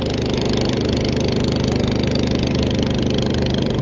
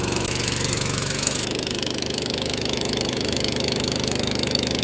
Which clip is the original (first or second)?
first